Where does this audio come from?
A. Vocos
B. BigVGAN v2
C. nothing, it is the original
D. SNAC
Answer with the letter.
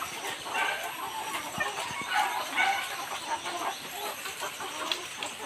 B